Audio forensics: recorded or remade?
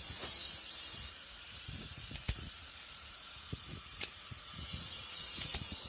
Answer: remade